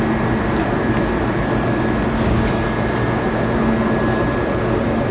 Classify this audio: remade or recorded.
recorded